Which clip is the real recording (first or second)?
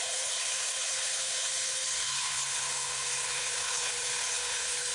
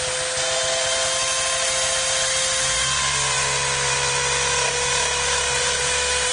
second